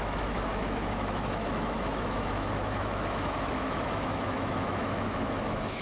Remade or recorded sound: remade